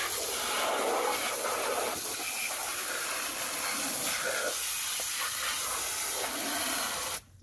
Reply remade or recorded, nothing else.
recorded